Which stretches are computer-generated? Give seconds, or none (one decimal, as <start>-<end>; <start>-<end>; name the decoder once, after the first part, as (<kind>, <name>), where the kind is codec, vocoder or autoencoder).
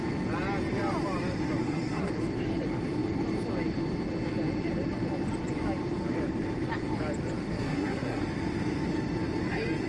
1.6-2.1 (codec, SNAC); 7.5-8.2